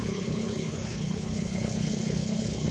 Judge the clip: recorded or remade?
remade